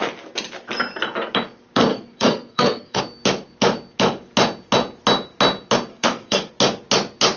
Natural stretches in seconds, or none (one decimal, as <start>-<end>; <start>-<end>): 0.0-1.9; 3.0-5.9; 6.5-7.4